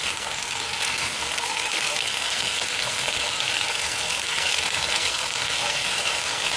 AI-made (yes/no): yes